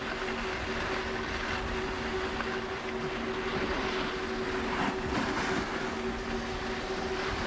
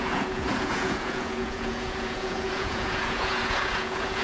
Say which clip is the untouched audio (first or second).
first